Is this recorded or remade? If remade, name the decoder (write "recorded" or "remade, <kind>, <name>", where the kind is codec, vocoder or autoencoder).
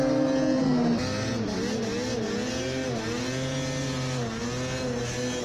recorded